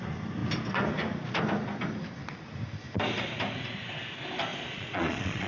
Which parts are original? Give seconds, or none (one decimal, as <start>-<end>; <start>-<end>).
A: 0.0-4.5